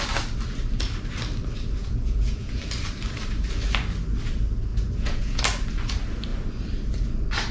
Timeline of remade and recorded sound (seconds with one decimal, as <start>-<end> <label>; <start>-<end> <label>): 0.0-1.8 recorded; 1.8-2.6 remade; 2.6-4.7 recorded; 4.7-5.4 remade; 5.4-7.5 recorded